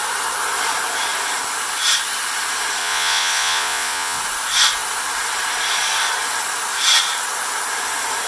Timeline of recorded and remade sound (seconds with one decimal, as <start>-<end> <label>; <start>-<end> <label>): 0.0-2.8 recorded; 2.8-4.2 remade; 4.2-8.3 recorded